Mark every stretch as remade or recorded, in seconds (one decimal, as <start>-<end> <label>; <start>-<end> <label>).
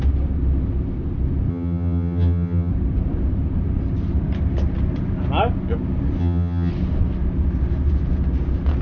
0.0-1.5 recorded; 1.5-2.7 remade; 2.7-6.2 recorded; 6.2-6.7 remade; 6.7-8.8 recorded